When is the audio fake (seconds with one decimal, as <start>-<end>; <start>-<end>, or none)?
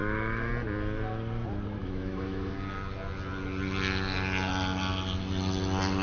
0.0-0.5; 1.8-2.5